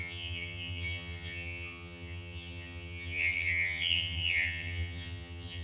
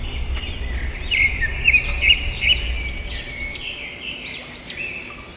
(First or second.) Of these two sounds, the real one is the second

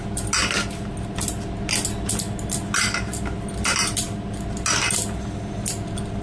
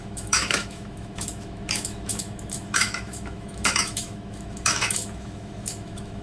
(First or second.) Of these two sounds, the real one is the first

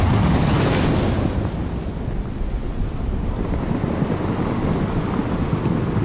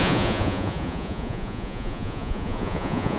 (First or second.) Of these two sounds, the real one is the first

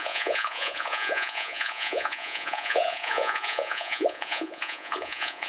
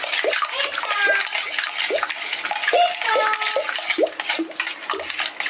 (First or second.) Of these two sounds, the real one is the second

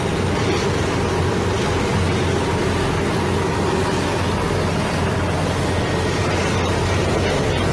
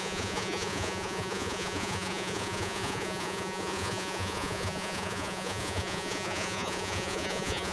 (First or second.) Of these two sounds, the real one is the first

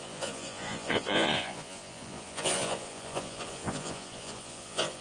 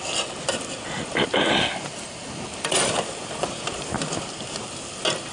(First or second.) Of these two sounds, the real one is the second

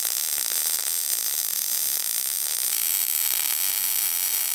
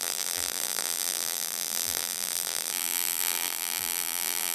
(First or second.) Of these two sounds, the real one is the first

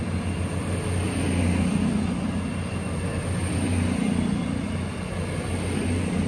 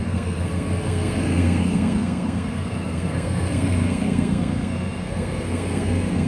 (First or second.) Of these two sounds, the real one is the first